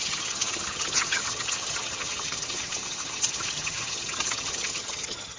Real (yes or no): no